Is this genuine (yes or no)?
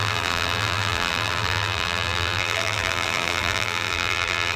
no